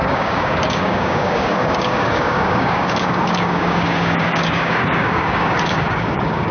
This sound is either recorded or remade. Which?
remade